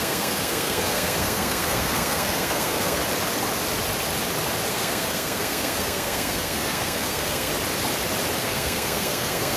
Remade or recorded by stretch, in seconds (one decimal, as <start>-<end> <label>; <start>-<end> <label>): 0.0-3.0 remade; 3.0-4.7 recorded; 4.7-7.5 remade; 7.5-8.4 recorded; 8.4-9.6 remade